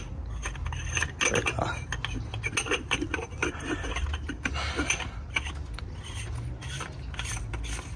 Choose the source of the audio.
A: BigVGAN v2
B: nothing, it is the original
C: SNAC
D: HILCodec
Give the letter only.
B